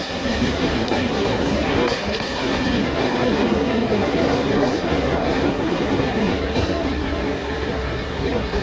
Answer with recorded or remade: remade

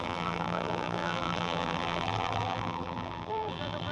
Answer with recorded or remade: remade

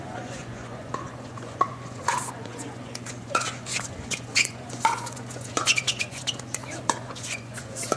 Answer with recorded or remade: remade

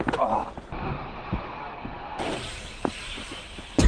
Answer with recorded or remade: remade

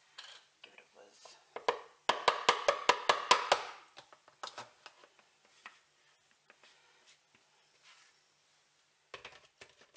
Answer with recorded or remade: recorded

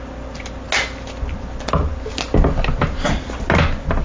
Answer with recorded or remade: recorded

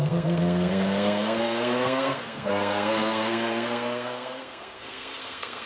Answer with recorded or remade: remade